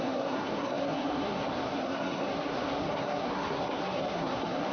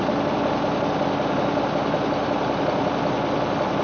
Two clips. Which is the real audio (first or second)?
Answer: second